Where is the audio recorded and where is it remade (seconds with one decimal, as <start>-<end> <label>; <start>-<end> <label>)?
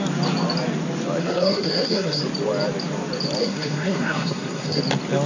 0.0-1.2 recorded; 1.2-2.2 remade; 2.2-3.4 recorded; 3.4-4.8 remade; 4.8-5.3 recorded